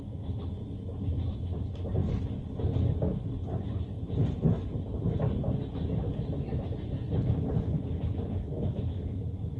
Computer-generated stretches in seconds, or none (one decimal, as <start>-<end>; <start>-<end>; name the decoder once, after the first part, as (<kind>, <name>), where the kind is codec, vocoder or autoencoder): none